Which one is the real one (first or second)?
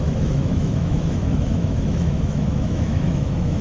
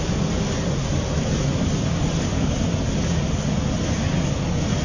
second